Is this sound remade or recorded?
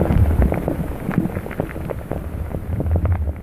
recorded